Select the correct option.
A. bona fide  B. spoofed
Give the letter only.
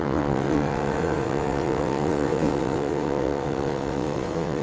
B